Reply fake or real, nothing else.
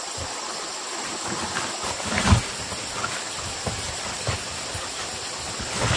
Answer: real